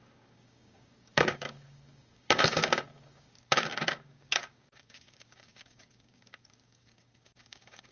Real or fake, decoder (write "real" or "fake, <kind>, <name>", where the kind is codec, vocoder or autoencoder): fake, codec, DAC